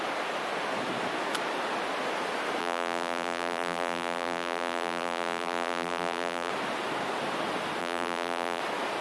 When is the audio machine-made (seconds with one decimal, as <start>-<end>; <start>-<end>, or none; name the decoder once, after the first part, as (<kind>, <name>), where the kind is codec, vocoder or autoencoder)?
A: 2.6-6.5 (vocoder, BigVGAN v2); 7.8-8.6